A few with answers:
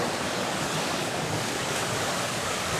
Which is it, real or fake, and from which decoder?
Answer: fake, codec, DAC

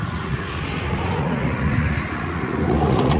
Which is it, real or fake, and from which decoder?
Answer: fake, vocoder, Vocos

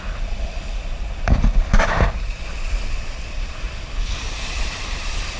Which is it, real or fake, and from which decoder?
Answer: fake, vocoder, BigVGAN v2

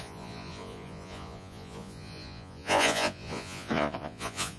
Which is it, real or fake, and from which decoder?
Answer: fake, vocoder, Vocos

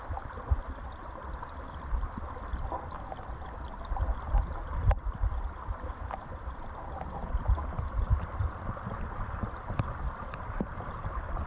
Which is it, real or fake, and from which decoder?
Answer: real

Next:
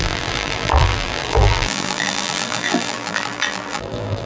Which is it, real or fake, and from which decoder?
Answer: fake, vocoder, BigVGAN v2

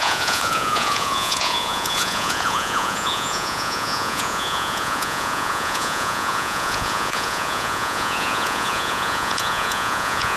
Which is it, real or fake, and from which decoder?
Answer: fake, vocoder, Vocos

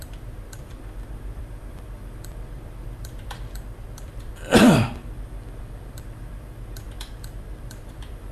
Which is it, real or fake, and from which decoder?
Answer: fake, vocoder, BigVGAN v2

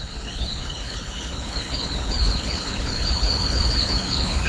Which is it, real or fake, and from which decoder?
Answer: fake, codec, HILCodec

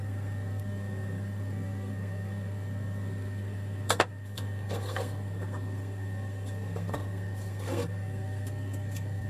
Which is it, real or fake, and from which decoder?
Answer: fake, codec, SNAC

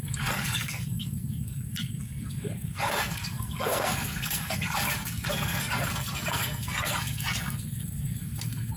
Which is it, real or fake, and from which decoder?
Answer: fake, codec, SNAC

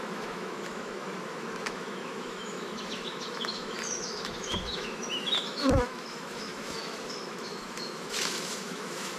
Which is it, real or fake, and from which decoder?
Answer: fake, autoencoder, DAC-VAE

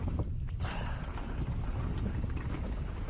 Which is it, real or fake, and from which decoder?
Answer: real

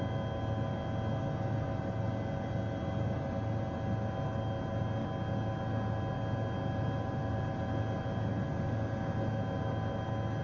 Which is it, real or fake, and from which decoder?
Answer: real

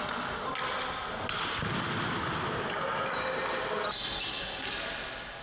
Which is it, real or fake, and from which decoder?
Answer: real